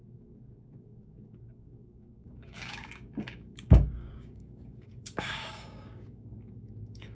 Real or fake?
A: fake